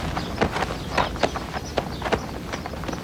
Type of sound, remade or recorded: recorded